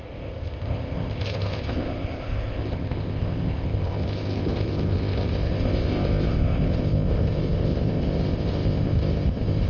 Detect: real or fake fake